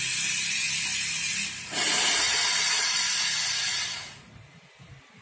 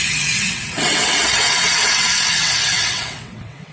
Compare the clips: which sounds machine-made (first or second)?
second